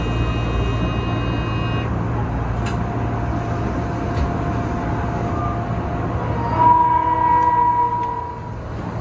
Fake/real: real